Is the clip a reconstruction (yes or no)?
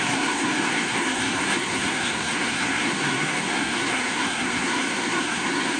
yes